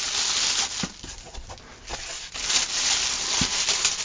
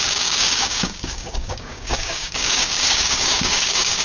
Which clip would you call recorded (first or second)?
first